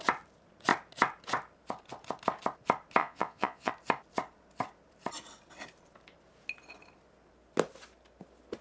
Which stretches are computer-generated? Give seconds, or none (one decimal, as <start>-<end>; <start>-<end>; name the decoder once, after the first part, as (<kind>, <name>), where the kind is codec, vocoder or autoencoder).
3.0-3.7 (vocoder, Vocos)

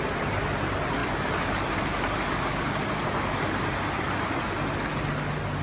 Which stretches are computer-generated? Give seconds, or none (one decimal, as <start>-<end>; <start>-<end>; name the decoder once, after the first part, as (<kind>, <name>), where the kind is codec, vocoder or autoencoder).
none

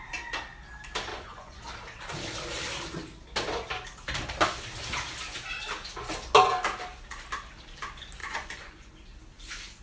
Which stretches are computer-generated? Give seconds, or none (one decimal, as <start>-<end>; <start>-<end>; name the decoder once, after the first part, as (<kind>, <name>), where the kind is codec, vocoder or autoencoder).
1.1-1.6 (vocoder, Vocos); 8.2-8.9